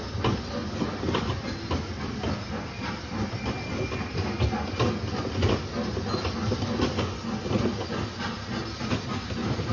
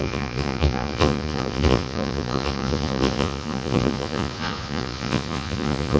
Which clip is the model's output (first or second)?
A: second